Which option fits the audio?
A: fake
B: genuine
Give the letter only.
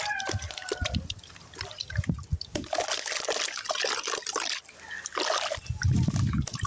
B